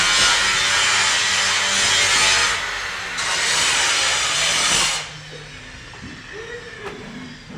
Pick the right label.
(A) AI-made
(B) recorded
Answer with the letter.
B